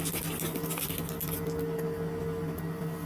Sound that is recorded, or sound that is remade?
recorded